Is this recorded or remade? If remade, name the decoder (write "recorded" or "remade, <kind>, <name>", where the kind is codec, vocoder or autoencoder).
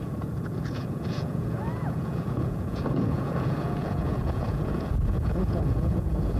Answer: remade, vocoder, Vocos